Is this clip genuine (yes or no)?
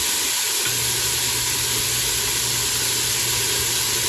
yes